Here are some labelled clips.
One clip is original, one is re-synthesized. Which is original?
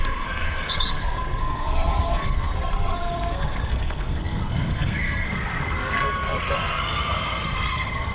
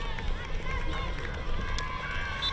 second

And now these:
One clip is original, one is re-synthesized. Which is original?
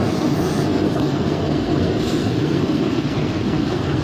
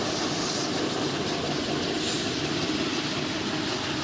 second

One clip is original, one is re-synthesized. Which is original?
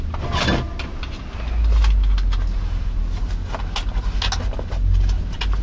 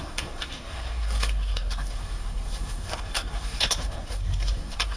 first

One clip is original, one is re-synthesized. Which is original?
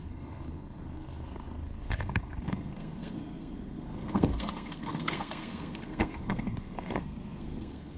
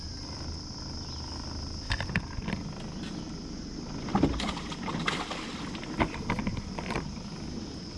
second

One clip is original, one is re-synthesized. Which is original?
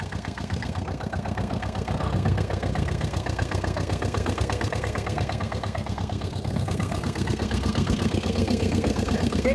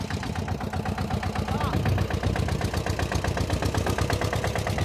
second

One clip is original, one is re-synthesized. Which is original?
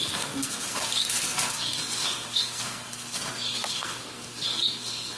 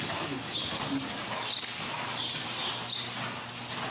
second